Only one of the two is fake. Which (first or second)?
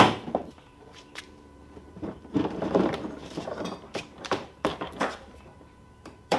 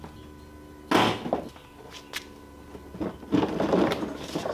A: first